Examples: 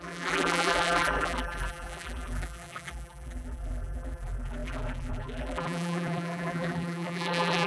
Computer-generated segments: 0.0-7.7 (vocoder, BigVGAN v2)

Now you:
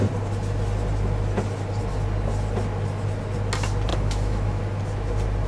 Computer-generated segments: 3.9-4.6 (autoencoder, DAC-VAE)

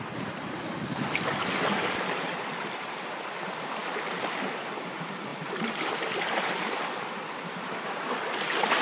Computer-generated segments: 5.3-5.9 (vocoder, BigVGAN v2)

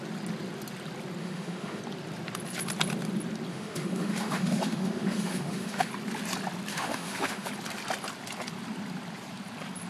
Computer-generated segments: 1.2-1.8 (autoencoder, DAC-VAE); 3.5-5.9; 6.7-7.5